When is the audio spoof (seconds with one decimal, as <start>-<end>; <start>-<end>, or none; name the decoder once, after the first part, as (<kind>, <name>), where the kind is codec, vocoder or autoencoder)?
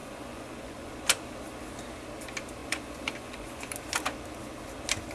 0.0-0.9 (vocoder, Vocos); 2.6-3.7